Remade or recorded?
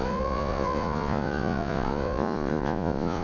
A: remade